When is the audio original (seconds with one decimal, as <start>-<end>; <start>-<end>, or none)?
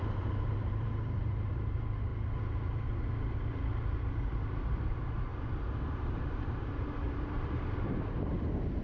2.1-4.4; 5.3-5.9